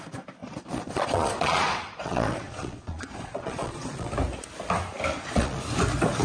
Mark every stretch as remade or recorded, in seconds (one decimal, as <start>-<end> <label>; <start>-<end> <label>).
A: 0.0-0.4 recorded; 0.4-4.1 remade; 4.1-5.1 recorded; 5.1-5.6 remade; 5.6-6.2 recorded